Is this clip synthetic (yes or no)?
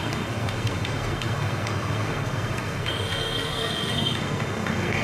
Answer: yes